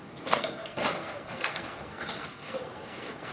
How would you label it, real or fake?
fake